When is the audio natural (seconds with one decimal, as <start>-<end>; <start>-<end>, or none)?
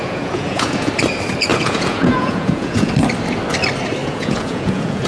0.9-1.5; 2.9-4.0